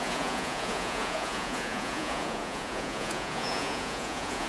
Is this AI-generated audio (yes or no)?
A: yes